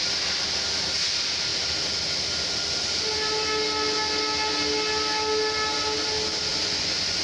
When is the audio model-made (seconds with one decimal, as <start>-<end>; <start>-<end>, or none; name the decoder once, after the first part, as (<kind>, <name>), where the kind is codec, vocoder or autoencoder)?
6.5-7.2 (vocoder, Vocos)